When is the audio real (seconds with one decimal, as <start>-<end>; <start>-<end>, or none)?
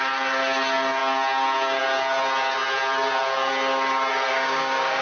0.0-4.3